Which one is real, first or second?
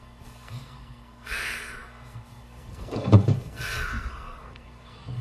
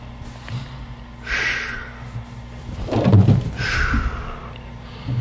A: second